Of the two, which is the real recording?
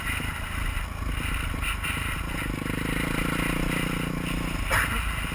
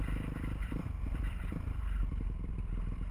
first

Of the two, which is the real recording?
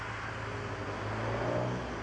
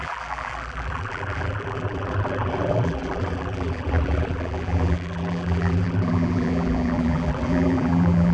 first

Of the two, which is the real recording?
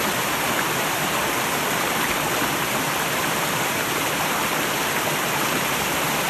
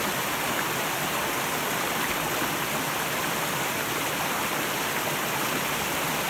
second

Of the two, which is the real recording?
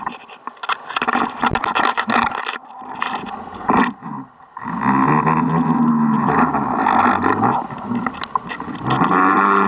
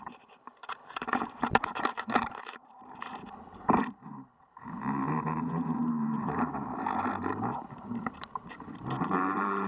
first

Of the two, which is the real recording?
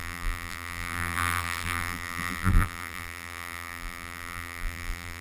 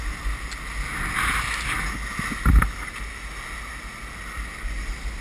second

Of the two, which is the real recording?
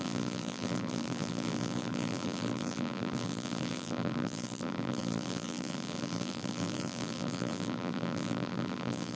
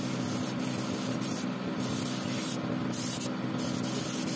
second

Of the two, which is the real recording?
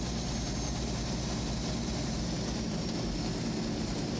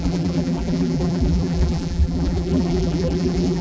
first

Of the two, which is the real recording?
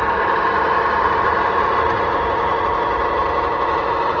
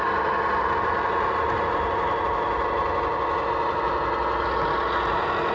second